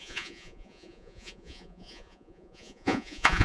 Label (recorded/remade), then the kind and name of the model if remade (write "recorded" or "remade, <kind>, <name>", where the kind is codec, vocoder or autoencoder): remade, vocoder, Vocos